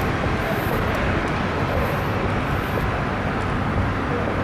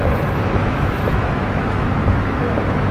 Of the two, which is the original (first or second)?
first